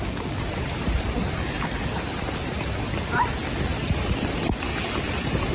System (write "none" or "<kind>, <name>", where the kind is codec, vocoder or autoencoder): none